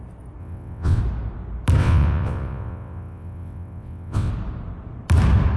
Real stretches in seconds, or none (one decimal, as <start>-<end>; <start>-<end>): 0.0-0.4; 1.0-1.8; 4.3-5.6